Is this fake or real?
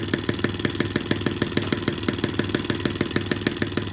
real